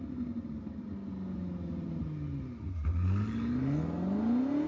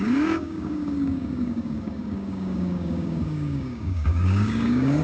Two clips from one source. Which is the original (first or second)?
first